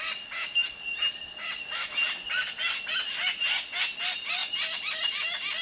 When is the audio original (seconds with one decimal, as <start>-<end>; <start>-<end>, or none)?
0.0-5.6